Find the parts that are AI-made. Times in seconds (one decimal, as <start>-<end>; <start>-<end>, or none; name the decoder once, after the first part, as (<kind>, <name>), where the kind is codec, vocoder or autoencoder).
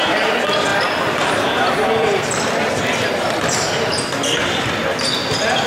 0.7-4.1 (vocoder, BigVGAN v2)